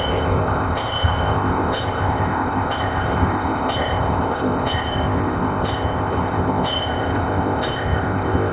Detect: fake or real fake